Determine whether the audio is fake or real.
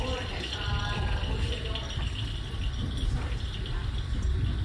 real